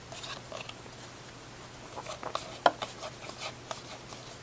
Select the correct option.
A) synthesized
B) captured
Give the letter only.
B